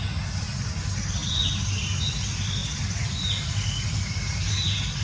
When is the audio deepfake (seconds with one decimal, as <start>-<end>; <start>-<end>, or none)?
none